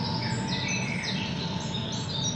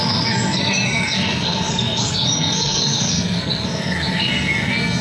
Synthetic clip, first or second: second